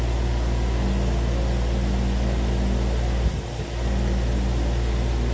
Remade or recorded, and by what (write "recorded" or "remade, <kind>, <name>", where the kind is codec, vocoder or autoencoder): recorded